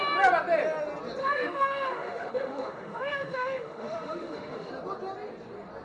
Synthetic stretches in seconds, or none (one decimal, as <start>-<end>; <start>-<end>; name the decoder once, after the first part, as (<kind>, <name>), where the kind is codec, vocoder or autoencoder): 1.2-4.7 (autoencoder, DAC-VAE)